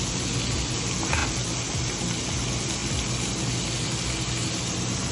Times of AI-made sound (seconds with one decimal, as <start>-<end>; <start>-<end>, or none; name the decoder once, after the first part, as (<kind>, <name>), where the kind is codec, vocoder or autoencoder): none